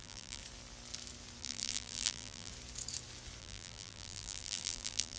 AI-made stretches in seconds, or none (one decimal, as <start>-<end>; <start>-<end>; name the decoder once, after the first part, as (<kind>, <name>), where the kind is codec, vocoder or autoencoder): 0.0-0.4 (vocoder, BigVGAN v2); 1.4-2.5; 3.4-5.2